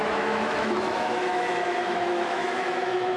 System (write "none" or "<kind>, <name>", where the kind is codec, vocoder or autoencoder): autoencoder, DAC-VAE